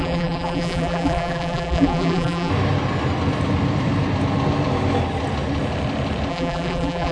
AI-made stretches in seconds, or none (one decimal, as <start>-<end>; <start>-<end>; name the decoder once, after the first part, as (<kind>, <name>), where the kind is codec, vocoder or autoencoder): 0.0-2.5 (vocoder, BigVGAN v2); 6.3-7.1